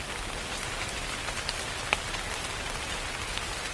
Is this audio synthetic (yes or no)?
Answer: no